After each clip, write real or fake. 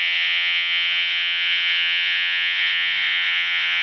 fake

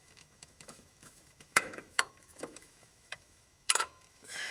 fake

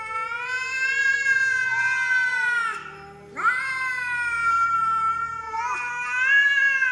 real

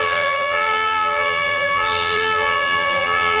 fake